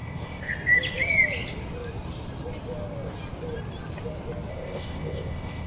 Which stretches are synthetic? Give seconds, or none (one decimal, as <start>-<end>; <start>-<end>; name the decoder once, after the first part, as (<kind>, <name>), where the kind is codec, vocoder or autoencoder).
0.0-0.5 (codec, ZipCodec); 4.5-5.7